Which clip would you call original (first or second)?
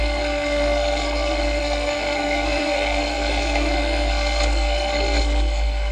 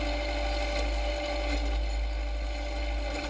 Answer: second